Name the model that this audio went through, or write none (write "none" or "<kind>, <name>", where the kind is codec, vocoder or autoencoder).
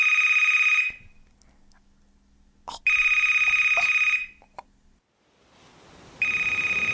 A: none